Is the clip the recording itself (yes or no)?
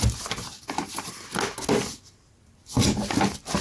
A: yes